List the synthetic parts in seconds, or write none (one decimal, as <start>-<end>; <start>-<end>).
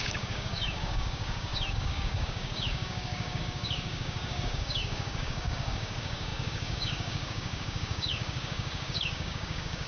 0.0-9.9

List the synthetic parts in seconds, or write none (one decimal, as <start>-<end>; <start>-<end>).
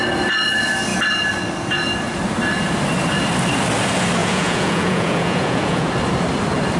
4.2-5.9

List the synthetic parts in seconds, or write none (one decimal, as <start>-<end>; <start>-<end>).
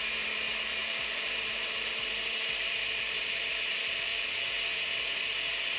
0.8-4.3